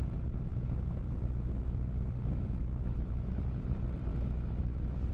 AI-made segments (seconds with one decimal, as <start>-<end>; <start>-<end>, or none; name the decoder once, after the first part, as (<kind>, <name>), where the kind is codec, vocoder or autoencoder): 0.5-3.6 (autoencoder, DAC-VAE); 4.1-5.1